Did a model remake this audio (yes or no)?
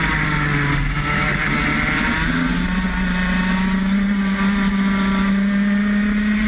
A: no